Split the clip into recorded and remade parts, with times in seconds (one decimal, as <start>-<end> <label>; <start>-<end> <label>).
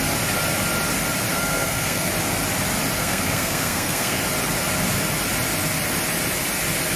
0.0-1.3 recorded; 1.3-2.1 remade; 2.1-3.0 recorded; 3.0-4.2 remade; 4.2-7.0 recorded